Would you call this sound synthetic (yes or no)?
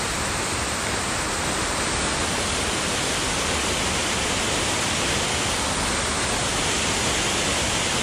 no